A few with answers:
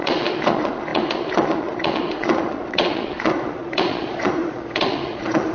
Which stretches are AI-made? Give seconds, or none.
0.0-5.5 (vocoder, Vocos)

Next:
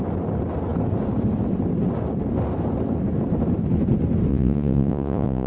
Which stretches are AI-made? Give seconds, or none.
4.3-5.5 (vocoder, Vocos)

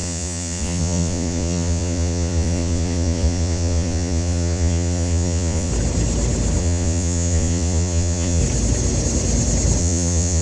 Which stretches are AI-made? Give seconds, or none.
0.0-5.7 (vocoder, Vocos); 6.6-8.4; 9.8-10.4

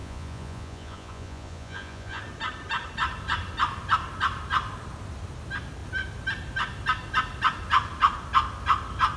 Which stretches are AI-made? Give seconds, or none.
0.0-2.2 (vocoder, Vocos)

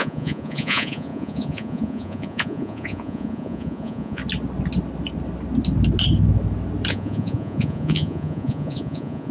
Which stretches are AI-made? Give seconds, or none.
0.0-4.2 (vocoder, Vocos); 6.9-9.3

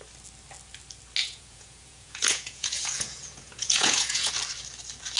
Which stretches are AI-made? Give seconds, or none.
1.2-4.3 (vocoder, Vocos)